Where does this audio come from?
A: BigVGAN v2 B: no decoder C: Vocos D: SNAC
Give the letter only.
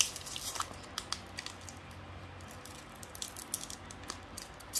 B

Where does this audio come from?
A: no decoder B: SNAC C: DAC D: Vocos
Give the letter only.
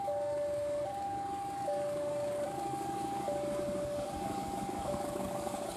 C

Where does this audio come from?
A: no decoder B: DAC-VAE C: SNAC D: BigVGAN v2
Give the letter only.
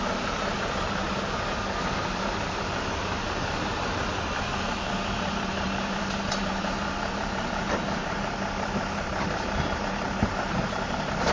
D